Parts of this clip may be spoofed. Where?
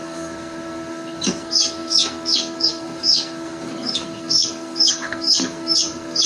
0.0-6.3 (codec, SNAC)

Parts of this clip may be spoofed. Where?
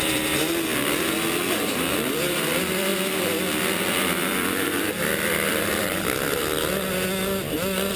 0.0-0.7 (vocoder, BigVGAN v2); 1.8-2.9; 3.8-6.4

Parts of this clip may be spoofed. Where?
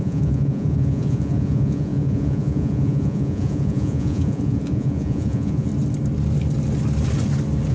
0.0-5.7 (vocoder, Vocos)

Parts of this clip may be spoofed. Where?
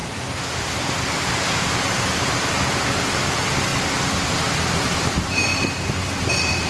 0.0-3.7 (vocoder, BigVGAN v2); 4.3-5.5; 6.1-6.7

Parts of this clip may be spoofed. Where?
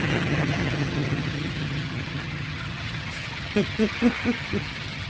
0.0-5.1 (vocoder, HiFi-GAN)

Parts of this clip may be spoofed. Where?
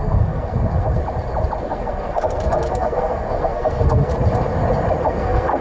0.0-1.0 (codec, SNAC); 1.6-4.1; 5.0-5.6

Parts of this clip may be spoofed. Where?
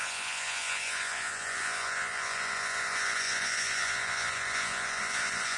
0.0-5.6 (vocoder, Vocos)